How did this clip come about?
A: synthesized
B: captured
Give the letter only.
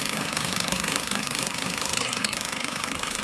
A